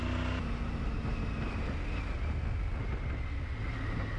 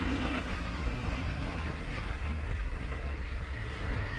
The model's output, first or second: second